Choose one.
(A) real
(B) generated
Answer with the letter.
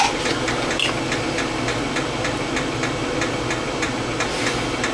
A